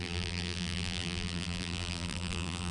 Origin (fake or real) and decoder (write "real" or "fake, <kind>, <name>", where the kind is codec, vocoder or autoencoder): fake, vocoder, BigVGAN v2